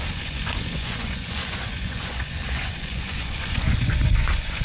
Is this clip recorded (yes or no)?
no